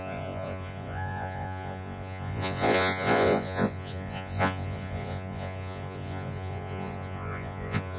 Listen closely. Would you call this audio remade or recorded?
remade